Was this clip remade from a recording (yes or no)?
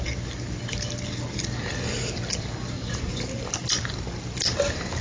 no